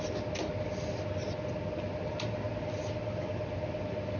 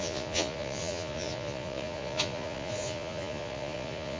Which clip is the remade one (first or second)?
second